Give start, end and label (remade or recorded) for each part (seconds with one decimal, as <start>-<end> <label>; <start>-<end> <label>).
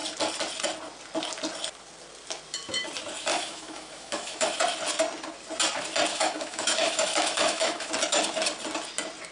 0.0-3.3 recorded; 3.3-4.6 remade; 4.6-6.1 recorded; 6.1-7.9 remade; 7.9-9.3 recorded